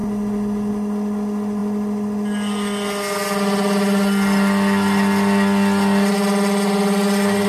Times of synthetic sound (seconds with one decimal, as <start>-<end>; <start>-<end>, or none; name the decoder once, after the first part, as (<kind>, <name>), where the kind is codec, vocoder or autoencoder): none